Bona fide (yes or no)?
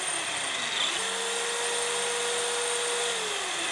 yes